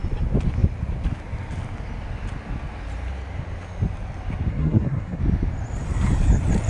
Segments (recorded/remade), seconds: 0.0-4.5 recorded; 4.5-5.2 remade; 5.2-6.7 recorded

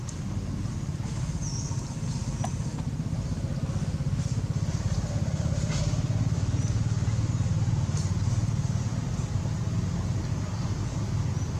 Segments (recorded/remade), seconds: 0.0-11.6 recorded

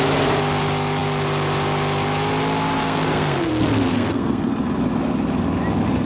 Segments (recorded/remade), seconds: 0.0-2.8 recorded; 2.8-3.5 remade; 3.5-3.9 recorded; 3.9-4.5 remade; 4.5-6.1 recorded

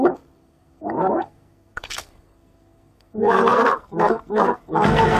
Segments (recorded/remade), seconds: 0.0-5.2 remade

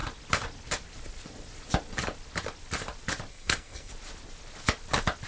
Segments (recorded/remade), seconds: 0.0-3.3 recorded; 3.3-3.9 remade; 3.9-5.3 recorded